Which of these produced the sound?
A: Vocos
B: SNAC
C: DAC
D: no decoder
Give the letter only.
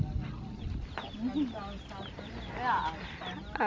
D